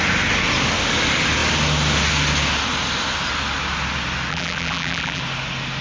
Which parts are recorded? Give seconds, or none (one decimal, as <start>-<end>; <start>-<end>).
0.0-4.3; 5.2-5.8